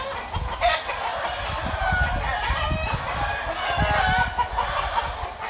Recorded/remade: recorded